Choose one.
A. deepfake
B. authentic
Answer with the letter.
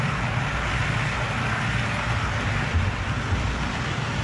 B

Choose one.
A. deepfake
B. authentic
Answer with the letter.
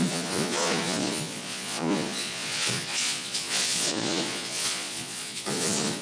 A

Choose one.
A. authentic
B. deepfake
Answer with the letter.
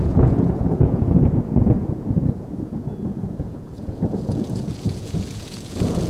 B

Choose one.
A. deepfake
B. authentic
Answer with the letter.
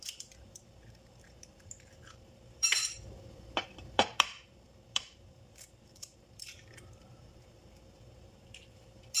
A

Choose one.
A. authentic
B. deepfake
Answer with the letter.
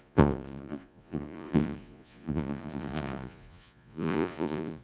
B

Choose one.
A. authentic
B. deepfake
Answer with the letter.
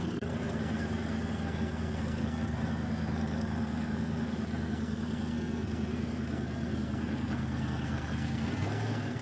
B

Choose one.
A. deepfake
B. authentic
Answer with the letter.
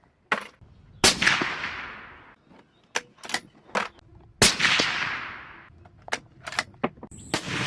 B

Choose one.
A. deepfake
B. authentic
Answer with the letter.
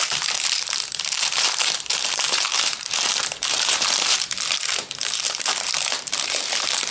A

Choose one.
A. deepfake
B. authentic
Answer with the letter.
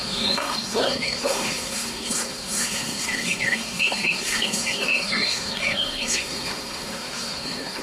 A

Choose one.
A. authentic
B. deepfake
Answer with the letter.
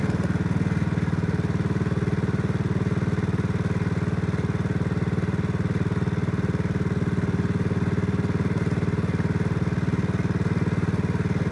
A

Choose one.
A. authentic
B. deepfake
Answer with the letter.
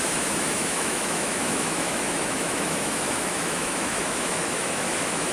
B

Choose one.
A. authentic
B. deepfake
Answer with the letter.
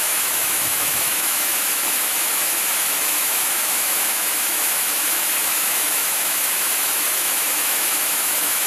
B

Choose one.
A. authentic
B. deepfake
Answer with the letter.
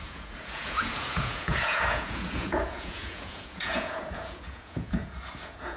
B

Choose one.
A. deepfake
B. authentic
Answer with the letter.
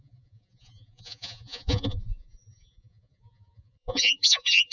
A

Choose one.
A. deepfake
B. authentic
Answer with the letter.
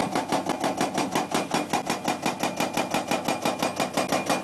B